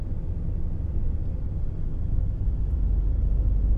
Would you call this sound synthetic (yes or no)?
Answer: no